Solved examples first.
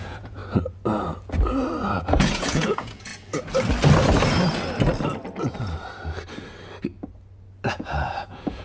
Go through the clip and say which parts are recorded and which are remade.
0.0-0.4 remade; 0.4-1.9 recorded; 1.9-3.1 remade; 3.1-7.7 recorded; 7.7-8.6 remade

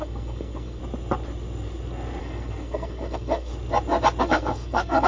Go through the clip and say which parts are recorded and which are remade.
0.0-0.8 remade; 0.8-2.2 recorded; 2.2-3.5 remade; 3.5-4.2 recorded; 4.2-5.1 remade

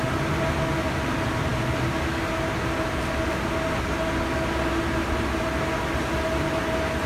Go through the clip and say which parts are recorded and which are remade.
0.0-7.1 recorded

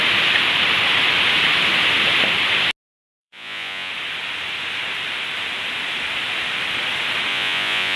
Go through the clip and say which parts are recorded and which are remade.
0.0-3.2 recorded; 3.2-3.9 remade; 3.9-7.3 recorded; 7.3-8.0 remade

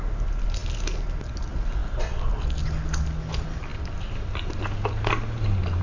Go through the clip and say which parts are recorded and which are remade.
0.0-5.8 recorded

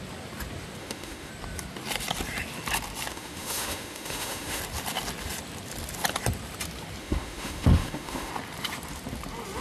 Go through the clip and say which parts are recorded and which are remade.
0.0-0.8 recorded; 0.8-1.3 remade; 1.3-3.1 recorded; 3.1-4.6 remade; 4.6-7.0 recorded; 7.0-8.3 remade; 8.3-9.6 recorded